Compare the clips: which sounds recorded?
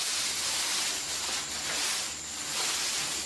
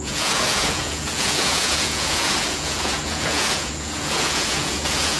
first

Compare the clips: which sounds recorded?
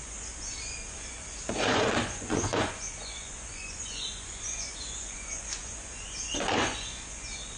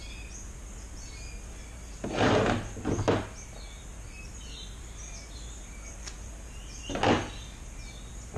second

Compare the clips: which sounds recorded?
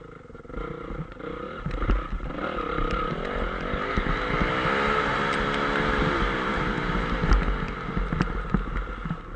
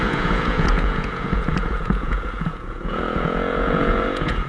first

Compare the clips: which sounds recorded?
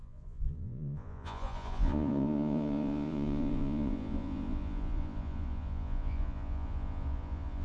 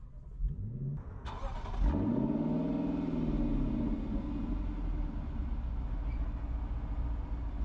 second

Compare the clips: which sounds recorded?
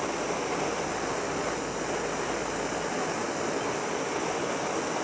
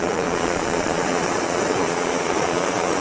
first